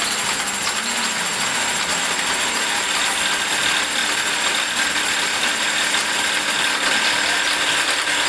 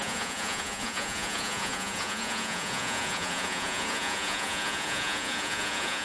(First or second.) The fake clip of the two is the second